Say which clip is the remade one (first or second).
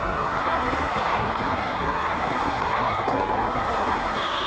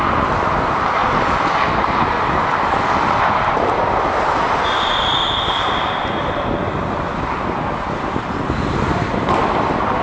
first